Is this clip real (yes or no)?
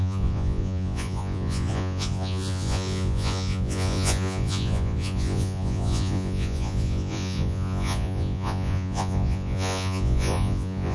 no